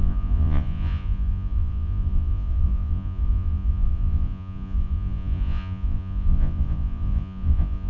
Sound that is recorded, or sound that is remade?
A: remade